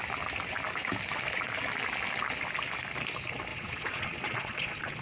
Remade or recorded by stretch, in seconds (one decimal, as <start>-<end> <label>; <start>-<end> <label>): 0.0-3.5 recorded; 3.5-5.0 remade